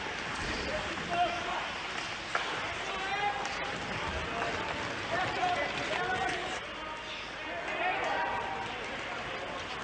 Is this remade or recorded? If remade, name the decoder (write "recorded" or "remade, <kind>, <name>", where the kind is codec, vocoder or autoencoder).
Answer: recorded